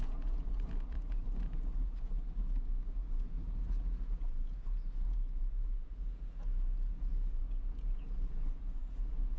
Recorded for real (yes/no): no